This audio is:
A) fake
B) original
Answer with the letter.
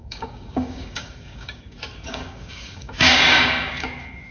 A